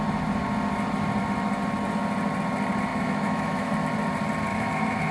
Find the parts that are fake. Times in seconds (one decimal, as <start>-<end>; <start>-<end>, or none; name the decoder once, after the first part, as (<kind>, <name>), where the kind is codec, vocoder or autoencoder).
2.9-3.7 (autoencoder, DAC-VAE); 4.5-5.1